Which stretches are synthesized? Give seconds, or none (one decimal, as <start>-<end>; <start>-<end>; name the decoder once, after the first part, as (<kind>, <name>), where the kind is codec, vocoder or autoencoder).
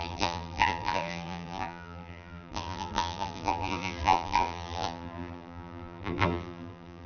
0.0-7.1 (vocoder, BigVGAN v2)